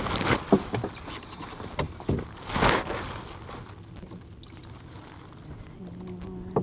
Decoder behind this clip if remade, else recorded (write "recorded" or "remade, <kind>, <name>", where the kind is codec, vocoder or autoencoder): recorded